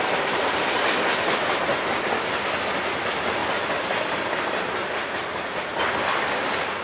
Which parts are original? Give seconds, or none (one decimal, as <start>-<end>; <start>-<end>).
0.0-1.1; 1.9-6.8